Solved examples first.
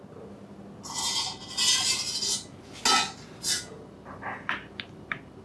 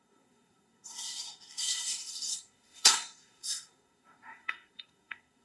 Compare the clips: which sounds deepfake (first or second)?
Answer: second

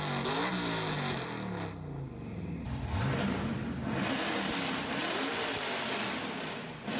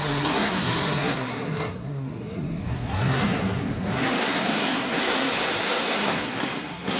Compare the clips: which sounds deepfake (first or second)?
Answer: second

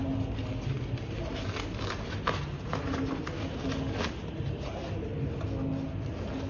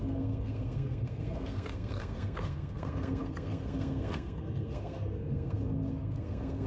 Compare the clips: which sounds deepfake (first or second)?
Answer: second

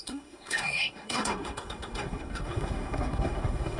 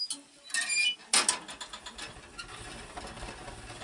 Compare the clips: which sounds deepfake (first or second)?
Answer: first